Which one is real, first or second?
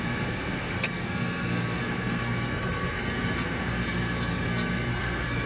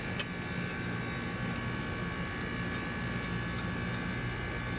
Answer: second